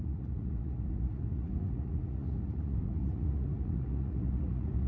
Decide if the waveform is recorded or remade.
remade